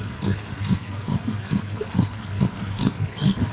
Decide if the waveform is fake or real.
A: fake